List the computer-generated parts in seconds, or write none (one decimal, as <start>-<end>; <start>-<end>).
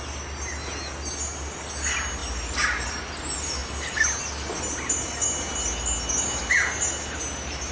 none